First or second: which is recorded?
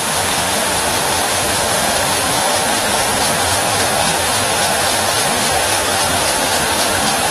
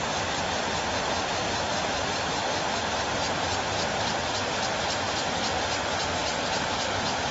second